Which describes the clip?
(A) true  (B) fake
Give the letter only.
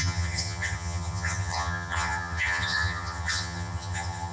B